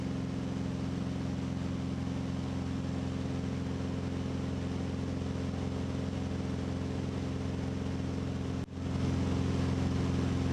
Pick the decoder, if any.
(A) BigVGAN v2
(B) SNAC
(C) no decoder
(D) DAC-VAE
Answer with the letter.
C